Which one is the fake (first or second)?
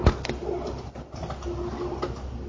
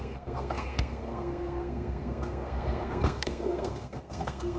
second